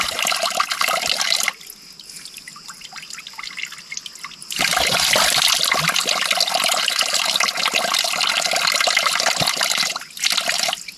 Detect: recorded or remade recorded